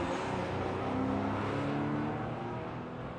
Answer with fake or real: real